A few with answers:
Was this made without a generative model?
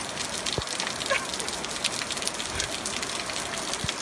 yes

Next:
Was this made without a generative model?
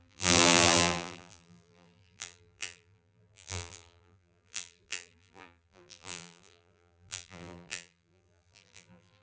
no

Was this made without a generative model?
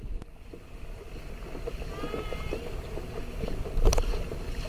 yes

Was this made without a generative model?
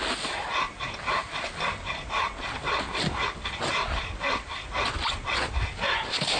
yes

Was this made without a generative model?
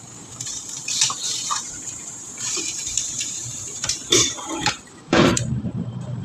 no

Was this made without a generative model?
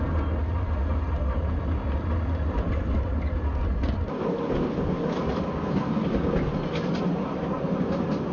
yes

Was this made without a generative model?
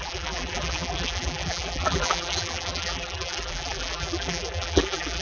no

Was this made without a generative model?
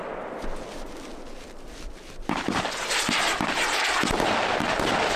yes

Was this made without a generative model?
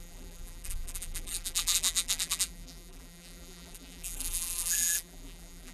no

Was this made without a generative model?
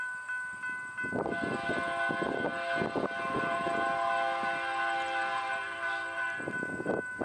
yes